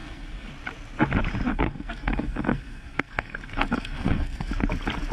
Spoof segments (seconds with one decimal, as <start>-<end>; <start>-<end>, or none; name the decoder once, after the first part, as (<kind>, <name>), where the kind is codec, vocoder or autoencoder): 0.0-0.5 (codec, SNAC); 1.5-4.5